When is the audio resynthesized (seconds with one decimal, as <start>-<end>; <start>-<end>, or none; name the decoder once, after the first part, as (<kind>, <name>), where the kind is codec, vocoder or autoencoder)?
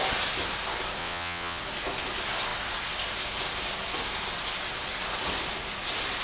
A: 1.0-1.6 (vocoder, WaveNeXt)